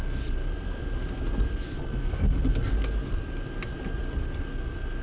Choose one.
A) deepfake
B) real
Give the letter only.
B